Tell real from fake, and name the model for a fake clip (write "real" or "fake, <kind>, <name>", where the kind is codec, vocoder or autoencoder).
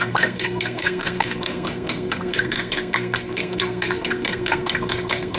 fake, codec, SNAC